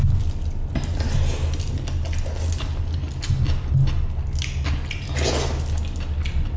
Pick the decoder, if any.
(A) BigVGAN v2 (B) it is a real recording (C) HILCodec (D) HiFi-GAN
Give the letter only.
B